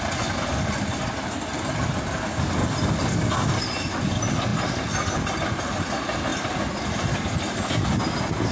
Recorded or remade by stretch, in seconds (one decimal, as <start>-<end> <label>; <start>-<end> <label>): 0.0-8.5 recorded